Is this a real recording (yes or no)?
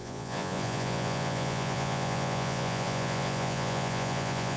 no